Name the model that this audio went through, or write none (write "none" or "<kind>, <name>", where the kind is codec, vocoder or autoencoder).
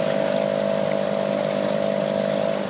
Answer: none